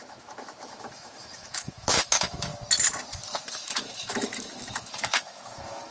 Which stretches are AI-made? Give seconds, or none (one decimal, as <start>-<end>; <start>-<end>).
0.0-2.5; 3.5-5.9